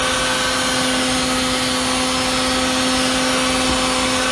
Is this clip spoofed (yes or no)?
no